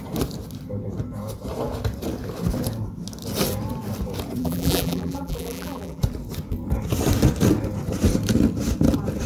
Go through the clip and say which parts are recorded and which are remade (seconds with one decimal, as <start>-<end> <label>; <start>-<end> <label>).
0.0-4.4 recorded; 4.4-6.0 remade; 6.0-9.3 recorded